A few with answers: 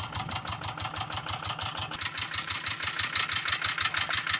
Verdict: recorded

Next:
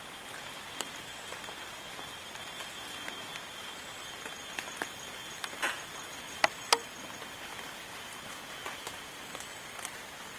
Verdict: recorded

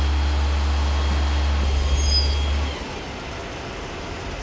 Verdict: recorded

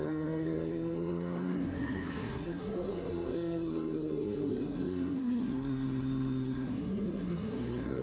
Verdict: remade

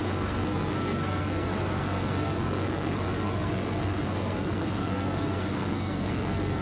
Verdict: remade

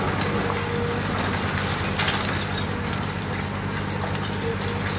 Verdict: recorded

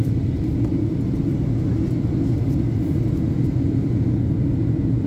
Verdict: recorded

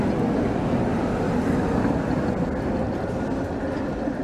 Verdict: recorded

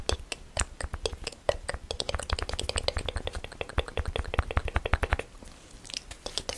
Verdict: recorded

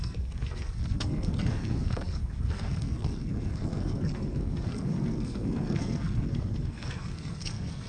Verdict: remade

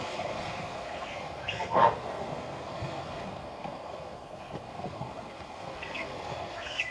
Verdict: remade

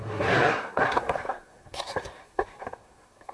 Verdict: remade